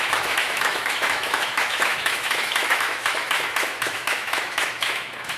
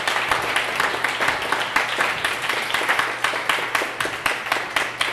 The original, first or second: second